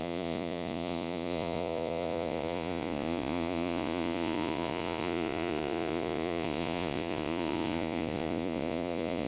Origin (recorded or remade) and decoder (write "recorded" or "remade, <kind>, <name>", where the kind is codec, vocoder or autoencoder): remade, vocoder, Vocos